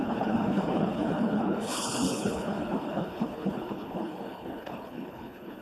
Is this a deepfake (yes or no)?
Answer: yes